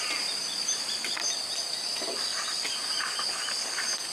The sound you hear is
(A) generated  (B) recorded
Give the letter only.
B